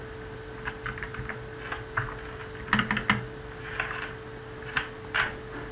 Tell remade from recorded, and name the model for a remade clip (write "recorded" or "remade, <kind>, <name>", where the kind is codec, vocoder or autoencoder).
recorded